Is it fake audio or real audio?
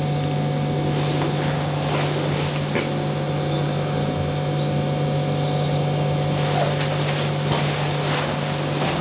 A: real